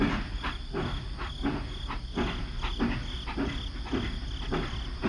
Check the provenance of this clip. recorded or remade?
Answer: recorded